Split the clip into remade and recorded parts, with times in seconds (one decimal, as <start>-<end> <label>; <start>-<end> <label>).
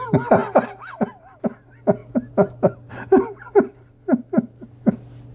0.0-5.3 recorded